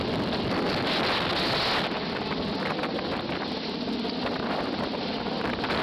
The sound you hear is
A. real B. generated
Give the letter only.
A